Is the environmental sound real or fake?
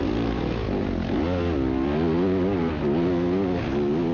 real